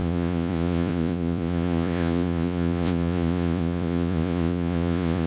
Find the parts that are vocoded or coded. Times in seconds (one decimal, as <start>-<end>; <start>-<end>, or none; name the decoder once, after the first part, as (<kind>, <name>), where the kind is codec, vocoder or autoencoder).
0.0-5.3 (vocoder, Vocos)